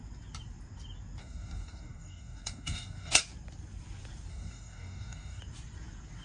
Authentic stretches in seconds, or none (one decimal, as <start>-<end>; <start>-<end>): 0.0-1.2; 3.2-4.3; 5.4-6.2